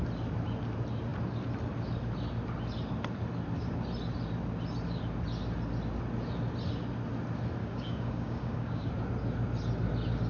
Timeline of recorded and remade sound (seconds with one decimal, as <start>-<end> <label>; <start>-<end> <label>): 0.0-7.6 recorded; 7.6-8.9 remade; 8.9-10.3 recorded